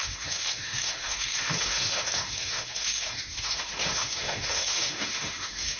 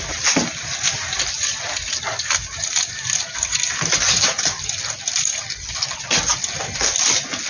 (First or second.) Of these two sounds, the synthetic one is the first